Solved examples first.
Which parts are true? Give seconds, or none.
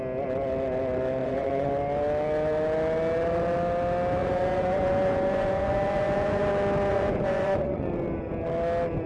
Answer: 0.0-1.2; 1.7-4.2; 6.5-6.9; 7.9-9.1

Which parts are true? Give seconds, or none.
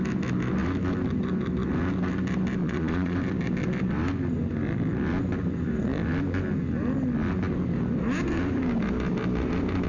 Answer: 0.0-2.6; 3.2-9.9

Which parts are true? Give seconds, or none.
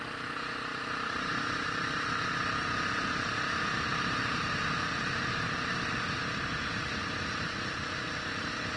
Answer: 0.0-0.7; 1.4-8.8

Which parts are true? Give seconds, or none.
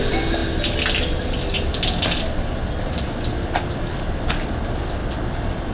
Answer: 0.0-5.7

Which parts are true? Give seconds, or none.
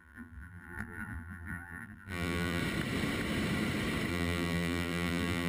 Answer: 2.6-4.1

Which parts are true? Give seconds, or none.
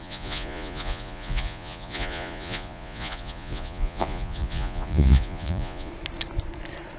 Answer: 5.9-7.0